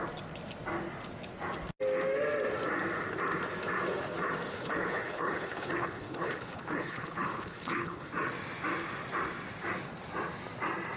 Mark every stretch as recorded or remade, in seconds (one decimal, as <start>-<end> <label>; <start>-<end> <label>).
0.0-4.5 recorded; 4.5-8.1 remade; 8.1-11.0 recorded